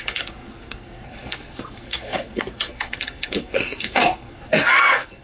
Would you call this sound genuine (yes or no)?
no